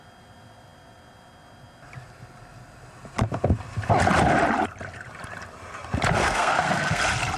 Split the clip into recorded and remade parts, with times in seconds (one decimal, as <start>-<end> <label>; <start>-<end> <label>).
0.0-6.2 recorded; 6.2-7.0 remade; 7.0-7.4 recorded